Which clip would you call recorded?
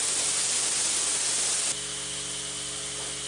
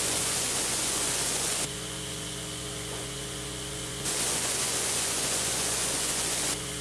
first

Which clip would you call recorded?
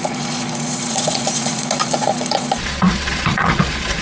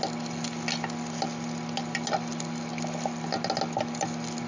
second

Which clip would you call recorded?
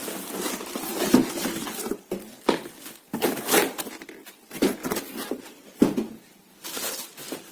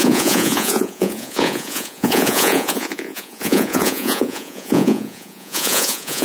first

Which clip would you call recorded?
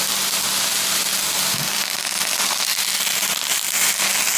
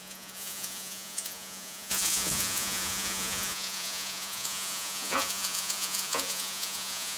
first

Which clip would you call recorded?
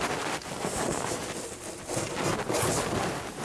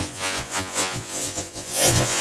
first